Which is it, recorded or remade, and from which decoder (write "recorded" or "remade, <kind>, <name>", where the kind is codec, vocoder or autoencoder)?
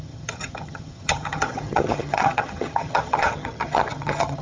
remade, vocoder, HiFi-GAN